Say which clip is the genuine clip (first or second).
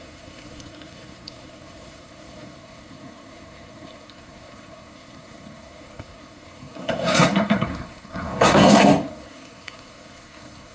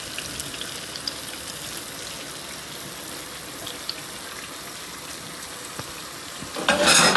second